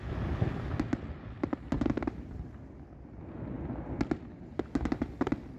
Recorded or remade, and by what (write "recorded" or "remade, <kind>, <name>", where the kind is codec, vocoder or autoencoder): recorded